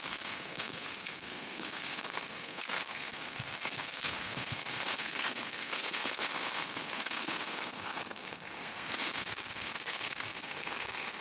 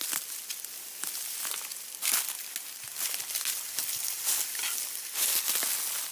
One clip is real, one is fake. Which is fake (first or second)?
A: first